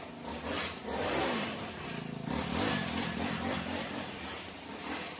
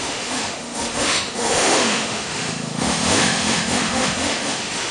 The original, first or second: first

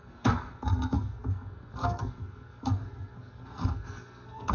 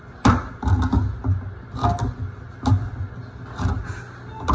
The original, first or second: second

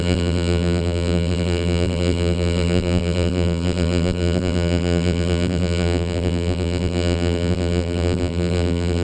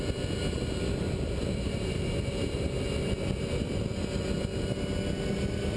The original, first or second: second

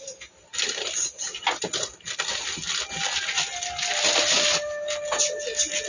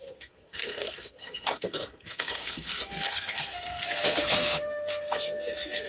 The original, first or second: first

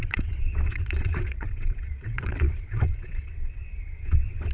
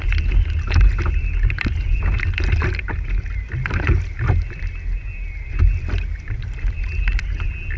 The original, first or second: second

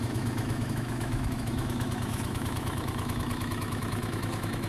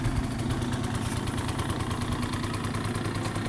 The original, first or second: second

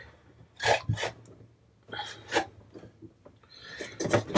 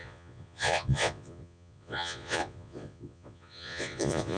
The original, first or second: first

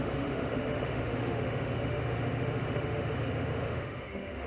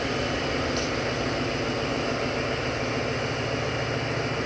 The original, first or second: second